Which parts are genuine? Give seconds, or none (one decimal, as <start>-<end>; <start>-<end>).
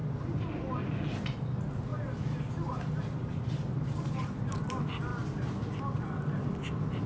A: 0.0-7.1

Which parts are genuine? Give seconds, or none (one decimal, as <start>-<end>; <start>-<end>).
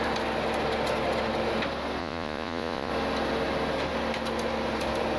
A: 0.0-2.0; 2.9-5.2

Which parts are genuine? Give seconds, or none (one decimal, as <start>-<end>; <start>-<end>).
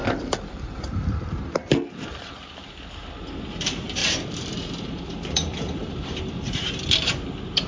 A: 2.8-4.0; 6.2-7.7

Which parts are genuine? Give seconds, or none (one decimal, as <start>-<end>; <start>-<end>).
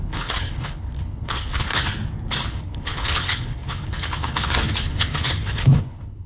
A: 1.9-2.5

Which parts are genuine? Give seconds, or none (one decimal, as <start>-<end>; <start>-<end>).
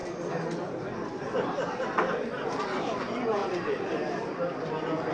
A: 2.8-5.1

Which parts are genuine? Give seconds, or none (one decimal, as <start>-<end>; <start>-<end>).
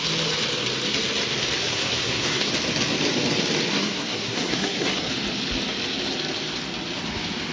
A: 0.0-1.6; 2.5-3.7; 5.1-7.5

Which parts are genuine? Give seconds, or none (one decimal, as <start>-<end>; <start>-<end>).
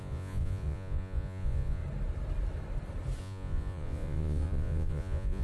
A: 1.8-3.2